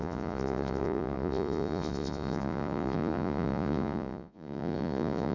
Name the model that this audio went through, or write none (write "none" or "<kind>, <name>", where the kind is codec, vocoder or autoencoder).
vocoder, Vocos